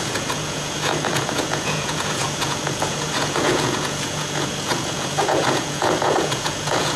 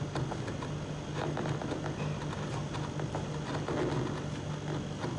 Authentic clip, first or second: second